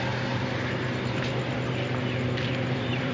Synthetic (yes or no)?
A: yes